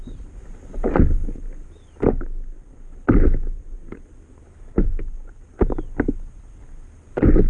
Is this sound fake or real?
real